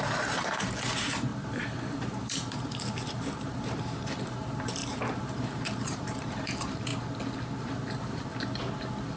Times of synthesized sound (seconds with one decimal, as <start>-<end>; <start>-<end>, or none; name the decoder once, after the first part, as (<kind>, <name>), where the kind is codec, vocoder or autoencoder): 0.0-6.9 (vocoder, BigVGAN v2); 7.6-8.3